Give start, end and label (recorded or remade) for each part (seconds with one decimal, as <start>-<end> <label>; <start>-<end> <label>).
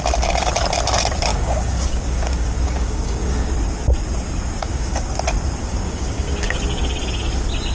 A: 0.0-1.3 recorded; 1.3-3.5 remade; 3.5-4.6 recorded; 4.6-5.1 remade; 5.1-5.6 recorded; 5.6-6.6 remade; 6.6-7.7 recorded